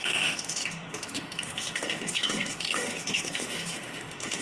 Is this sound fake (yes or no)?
yes